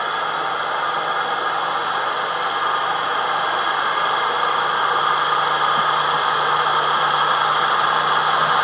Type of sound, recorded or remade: recorded